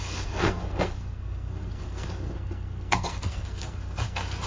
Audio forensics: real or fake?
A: fake